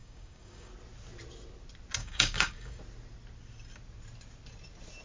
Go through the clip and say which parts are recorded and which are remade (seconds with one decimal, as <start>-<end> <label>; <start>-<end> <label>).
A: 0.0-0.7 remade; 0.7-2.0 recorded; 2.0-2.8 remade; 2.8-5.0 recorded